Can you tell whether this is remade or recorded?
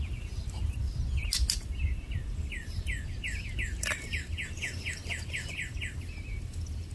recorded